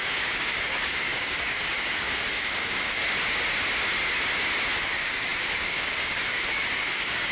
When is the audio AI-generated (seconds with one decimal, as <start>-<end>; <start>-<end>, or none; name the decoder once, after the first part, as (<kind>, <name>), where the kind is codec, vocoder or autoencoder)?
0.0-3.0 (codec, DAC); 4.8-7.3